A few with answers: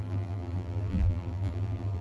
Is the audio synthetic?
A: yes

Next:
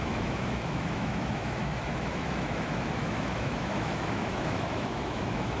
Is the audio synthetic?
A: yes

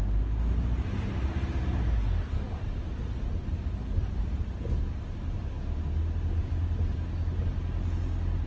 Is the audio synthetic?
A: no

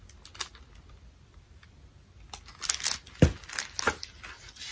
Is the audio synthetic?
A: no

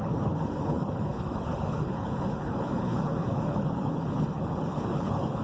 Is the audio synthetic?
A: yes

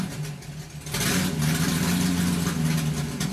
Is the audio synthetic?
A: no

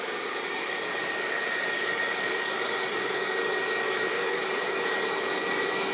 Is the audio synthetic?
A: yes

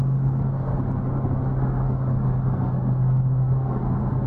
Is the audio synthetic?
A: yes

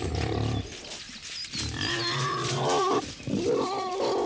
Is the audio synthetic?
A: yes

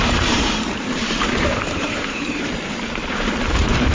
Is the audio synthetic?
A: yes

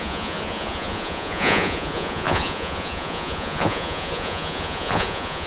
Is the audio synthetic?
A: yes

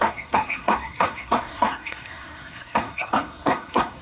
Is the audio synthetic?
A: yes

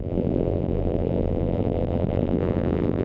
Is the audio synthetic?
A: yes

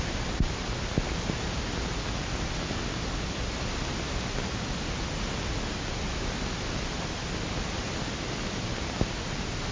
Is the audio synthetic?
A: no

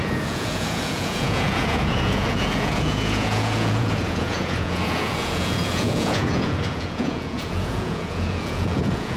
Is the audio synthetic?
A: yes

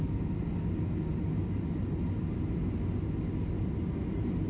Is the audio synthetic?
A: no